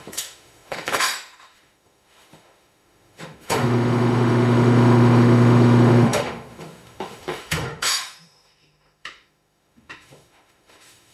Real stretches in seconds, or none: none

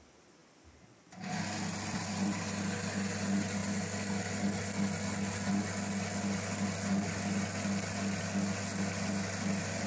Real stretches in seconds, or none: 0.0-9.9

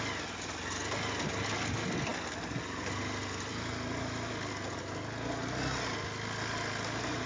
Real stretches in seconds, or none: 0.0-7.3

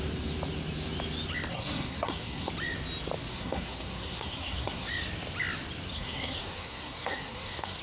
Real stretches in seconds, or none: 0.0-1.5; 2.5-3.3; 4.9-5.9

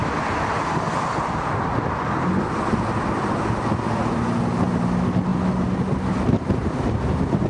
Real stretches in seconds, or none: 0.0-7.5